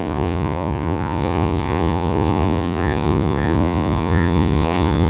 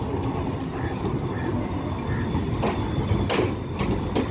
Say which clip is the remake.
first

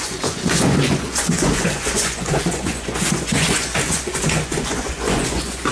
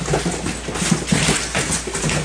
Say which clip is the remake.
first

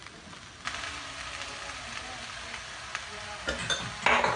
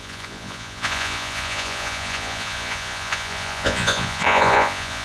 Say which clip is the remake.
second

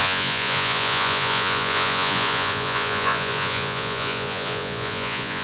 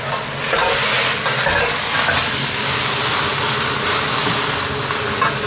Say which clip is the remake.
first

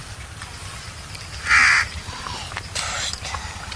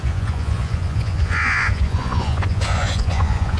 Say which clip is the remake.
second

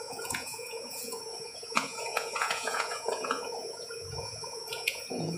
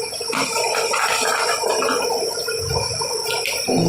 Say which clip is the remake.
first